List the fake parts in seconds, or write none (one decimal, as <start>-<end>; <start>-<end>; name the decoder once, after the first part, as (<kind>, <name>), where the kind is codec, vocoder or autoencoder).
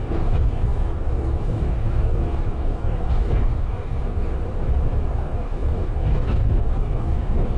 0.0-4.4 (codec, DAC); 5.1-7.6